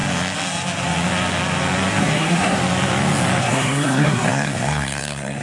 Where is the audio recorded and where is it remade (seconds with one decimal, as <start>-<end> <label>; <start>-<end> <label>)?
0.0-2.0 recorded; 2.0-2.6 remade; 2.6-3.4 recorded; 3.4-5.4 remade